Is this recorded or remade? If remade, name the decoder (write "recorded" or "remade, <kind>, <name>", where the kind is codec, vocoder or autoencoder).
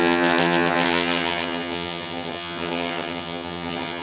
remade, vocoder, HiFi-GAN